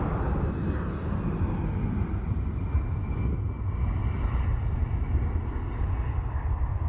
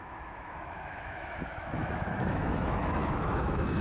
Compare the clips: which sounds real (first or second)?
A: first